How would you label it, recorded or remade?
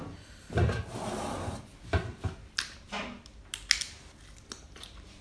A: recorded